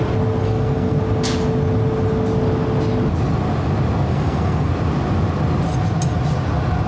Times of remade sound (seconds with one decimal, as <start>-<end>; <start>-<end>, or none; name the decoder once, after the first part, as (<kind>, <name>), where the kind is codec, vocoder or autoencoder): 0.4-1.0 (codec, SNAC); 4.1-4.7

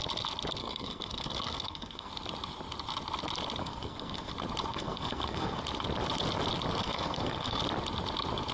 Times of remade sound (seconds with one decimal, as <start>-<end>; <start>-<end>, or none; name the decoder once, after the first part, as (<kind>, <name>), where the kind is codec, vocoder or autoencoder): 0.6-2.1 (codec, SNAC); 3.6-4.3; 4.7-5.6; 6.8-7.6

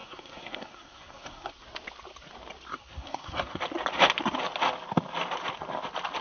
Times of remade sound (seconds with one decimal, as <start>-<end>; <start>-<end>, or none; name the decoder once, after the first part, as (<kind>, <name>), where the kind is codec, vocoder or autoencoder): 0.0-1.5 (codec, SNAC); 2.7-3.6